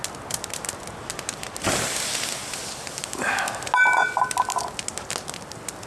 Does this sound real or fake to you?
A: real